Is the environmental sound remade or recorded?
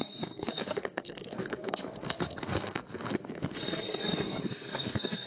remade